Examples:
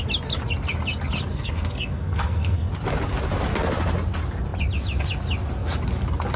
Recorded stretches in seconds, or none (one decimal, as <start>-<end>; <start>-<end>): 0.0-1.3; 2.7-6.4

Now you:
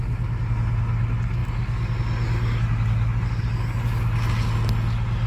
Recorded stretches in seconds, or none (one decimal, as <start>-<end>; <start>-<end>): 0.0-5.3

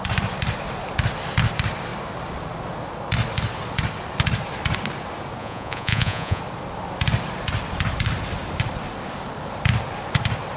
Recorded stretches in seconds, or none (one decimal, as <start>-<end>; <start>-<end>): 0.0-5.4; 6.4-10.6